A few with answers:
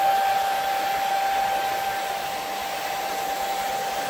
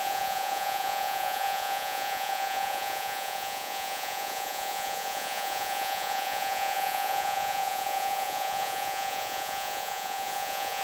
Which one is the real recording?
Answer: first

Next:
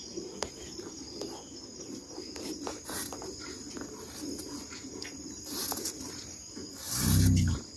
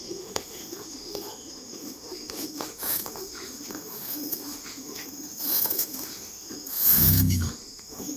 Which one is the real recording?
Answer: first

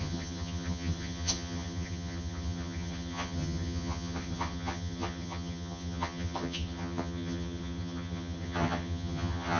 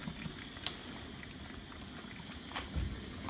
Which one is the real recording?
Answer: second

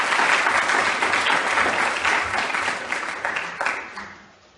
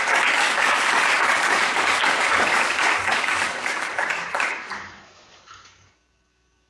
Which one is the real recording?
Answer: first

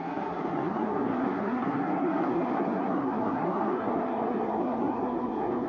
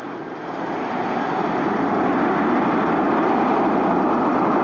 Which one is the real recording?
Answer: second